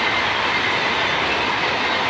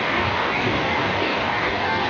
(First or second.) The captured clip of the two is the first